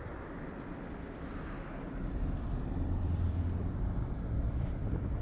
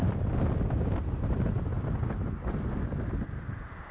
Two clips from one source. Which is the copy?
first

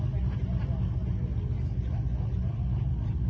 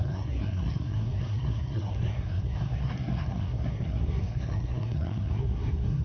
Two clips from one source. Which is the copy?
second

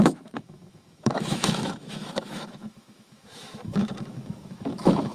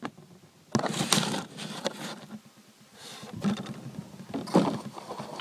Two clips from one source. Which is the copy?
first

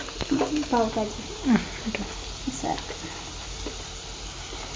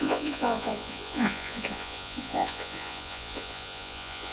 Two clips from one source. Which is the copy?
second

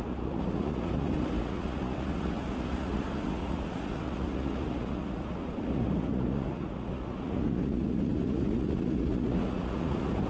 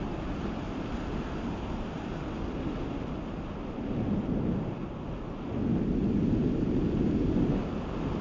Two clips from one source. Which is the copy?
first